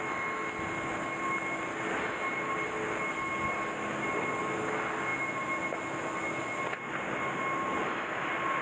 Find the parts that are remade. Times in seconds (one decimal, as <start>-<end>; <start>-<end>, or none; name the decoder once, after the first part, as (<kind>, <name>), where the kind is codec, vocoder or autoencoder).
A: none